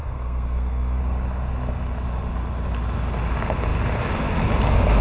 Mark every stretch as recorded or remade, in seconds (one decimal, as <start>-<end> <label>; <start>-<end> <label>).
0.0-1.0 remade; 1.0-5.0 recorded